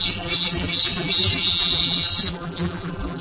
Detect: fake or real fake